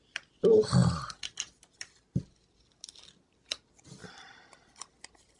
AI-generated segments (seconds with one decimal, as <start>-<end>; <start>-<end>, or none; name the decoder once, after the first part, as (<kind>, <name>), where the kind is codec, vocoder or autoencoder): none